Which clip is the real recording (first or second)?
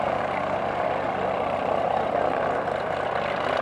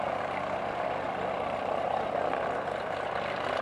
first